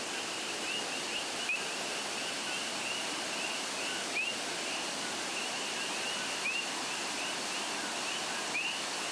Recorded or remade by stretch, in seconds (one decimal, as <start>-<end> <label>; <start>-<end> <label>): 0.0-9.1 recorded